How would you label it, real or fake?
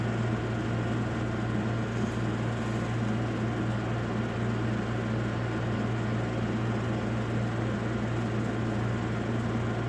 real